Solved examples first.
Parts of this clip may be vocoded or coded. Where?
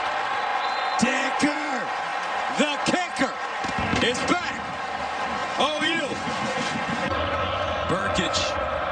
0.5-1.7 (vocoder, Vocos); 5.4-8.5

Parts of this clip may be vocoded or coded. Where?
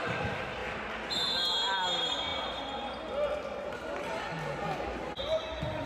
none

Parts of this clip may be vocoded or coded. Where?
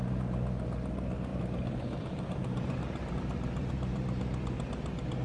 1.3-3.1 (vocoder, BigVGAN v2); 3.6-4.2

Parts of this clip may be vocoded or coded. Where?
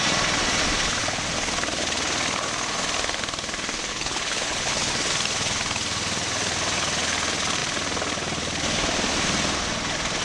3.9-4.9 (codec, HILCodec)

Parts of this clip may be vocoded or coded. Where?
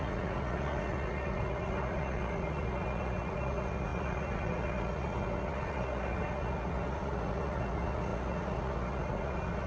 0.0-9.7 (vocoder, Vocos)